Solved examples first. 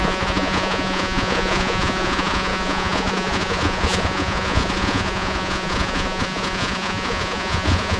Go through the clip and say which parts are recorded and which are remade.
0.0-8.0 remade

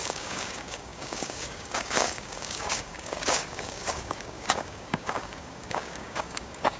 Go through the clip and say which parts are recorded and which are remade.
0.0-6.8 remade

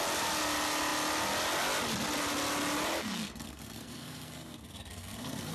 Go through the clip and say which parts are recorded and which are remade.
0.0-3.0 recorded; 3.0-5.5 remade